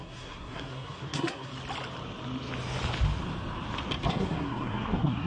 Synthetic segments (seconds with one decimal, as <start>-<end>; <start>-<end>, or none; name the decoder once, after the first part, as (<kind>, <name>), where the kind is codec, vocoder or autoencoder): 0.0-1.5 (codec, SNAC); 4.1-5.3